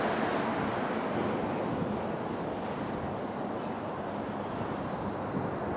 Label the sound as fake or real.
real